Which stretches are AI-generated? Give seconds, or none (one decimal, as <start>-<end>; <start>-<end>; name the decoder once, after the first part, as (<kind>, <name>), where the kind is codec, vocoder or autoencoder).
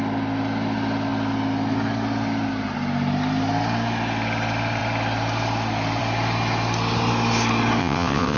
7.8-8.4 (vocoder, WaveNeXt)